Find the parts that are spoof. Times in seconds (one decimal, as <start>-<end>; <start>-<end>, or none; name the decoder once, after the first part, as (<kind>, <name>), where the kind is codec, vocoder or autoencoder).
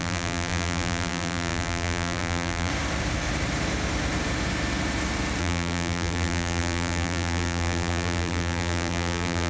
0.0-2.7 (vocoder, BigVGAN v2); 5.4-9.5